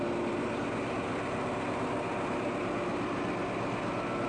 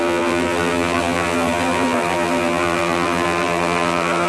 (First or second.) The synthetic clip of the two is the second